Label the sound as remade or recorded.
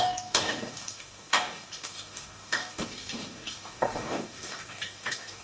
remade